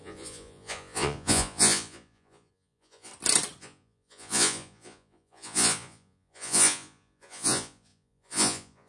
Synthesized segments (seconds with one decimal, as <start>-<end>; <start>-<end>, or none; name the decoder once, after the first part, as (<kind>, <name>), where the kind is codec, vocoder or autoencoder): 0.0-3.1 (vocoder, Vocos); 3.6-8.9

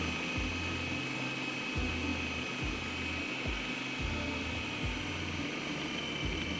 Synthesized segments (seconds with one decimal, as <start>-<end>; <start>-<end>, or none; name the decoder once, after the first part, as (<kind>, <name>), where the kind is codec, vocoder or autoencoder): none

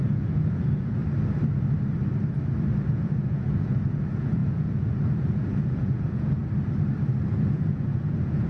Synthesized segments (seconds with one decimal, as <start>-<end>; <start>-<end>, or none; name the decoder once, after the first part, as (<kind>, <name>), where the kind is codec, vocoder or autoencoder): 0.0-1.0 (vocoder, Vocos); 2.8-6.4; 7.3-8.5

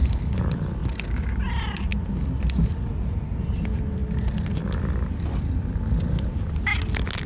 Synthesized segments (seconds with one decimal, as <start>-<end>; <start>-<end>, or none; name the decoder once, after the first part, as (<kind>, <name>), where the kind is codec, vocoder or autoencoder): none

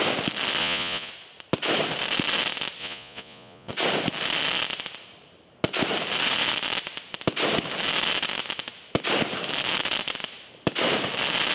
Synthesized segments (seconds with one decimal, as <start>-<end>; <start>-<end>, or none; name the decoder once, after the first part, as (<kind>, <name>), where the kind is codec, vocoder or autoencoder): 0.6-1.1 (vocoder, Vocos); 2.8-3.7

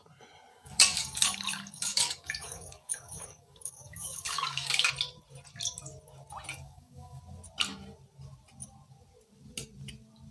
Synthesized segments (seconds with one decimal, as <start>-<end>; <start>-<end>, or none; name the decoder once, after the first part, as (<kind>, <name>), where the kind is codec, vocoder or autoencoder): 0.5-4.9 (codec, DAC); 6.5-7.2

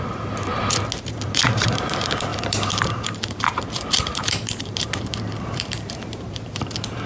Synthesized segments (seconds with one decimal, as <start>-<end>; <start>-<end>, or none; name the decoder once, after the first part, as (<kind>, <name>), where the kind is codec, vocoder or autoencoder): 0.0-0.5 (vocoder, BigVGAN v2); 1.1-7.1